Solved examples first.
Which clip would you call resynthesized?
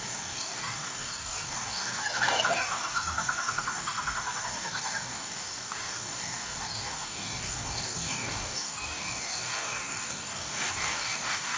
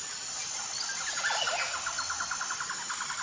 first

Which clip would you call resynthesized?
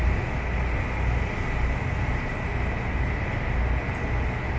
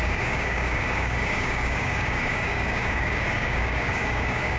second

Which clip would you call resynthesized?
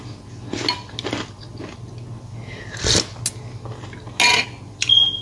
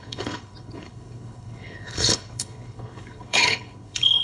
second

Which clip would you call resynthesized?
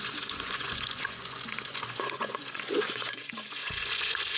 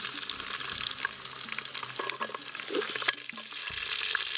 first